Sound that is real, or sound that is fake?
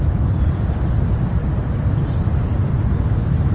real